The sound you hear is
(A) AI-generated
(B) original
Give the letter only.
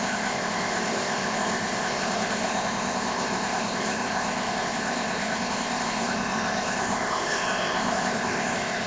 A